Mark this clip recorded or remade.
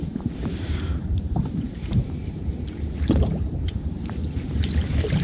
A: remade